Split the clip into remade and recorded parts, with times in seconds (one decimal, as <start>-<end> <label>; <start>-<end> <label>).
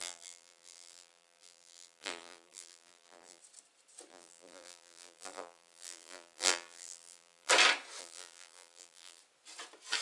0.0-3.4 remade; 3.4-4.1 recorded; 4.1-7.5 remade; 7.5-8.0 recorded; 8.0-9.2 remade; 9.2-10.0 recorded